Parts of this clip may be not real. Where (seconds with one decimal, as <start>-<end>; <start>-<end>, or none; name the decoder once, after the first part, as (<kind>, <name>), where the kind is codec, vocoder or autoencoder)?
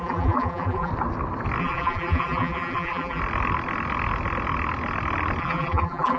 0.0-0.9 (vocoder, BigVGAN v2); 1.6-3.2; 5.4-6.2